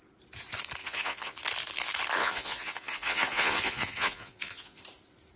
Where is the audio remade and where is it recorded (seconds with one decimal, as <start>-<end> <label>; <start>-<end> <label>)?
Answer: 0.0-0.8 recorded; 0.8-1.4 remade; 1.4-2.2 recorded; 2.2-4.8 remade; 4.8-5.4 recorded

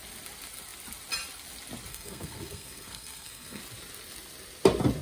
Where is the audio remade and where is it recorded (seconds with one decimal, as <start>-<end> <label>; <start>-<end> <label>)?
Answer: 0.0-1.9 recorded; 1.9-3.6 remade; 3.6-5.0 recorded

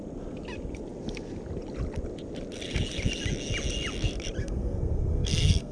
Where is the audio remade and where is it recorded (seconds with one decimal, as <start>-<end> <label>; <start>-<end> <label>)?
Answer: 0.0-4.4 recorded; 4.4-5.7 remade